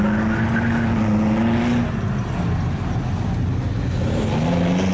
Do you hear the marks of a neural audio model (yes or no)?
no